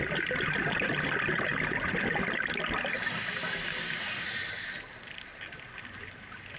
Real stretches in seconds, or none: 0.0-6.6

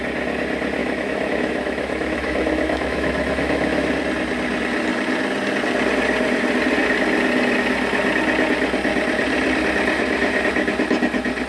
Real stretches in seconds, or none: 0.0-0.8; 3.9-11.5

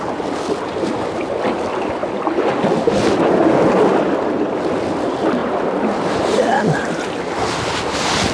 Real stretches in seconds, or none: 0.0-2.0; 2.9-3.9; 4.4-5.4; 6.6-8.3

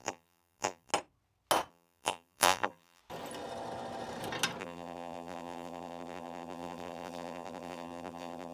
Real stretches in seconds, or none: 0.9-1.7; 3.0-4.6

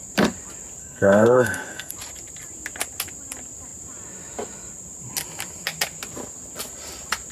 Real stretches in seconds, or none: 0.0-0.8; 1.9-7.3

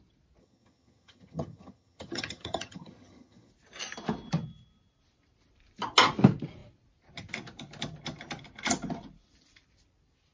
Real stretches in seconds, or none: 0.0-0.4; 3.5-10.3